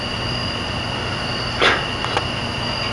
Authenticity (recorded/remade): recorded